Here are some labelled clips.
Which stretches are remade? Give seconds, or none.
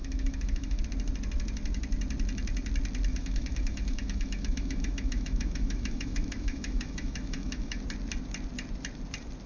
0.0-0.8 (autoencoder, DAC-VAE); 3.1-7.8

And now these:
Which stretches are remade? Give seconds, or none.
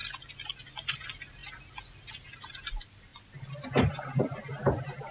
none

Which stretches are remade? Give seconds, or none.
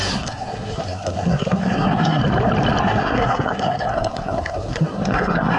0.0-2.2 (codec, SNAC); 2.8-5.6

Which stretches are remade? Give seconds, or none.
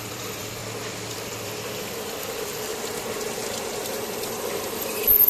0.0-0.6 (vocoder, BigVGAN v2); 1.1-2.7; 3.8-5.3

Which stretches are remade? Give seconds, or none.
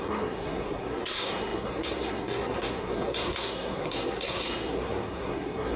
0.0-5.8 (codec, SNAC)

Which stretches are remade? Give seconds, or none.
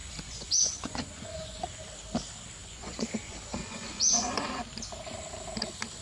0.0-1.6 (vocoder, Vocos); 2.6-4.5